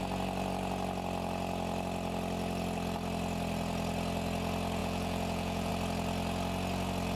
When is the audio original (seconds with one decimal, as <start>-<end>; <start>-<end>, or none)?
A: 0.0-4.8; 5.7-7.2